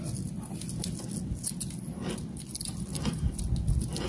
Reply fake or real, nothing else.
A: real